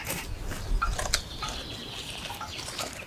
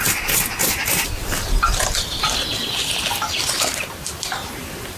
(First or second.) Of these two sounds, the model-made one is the second